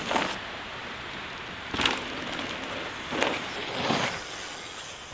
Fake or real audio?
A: real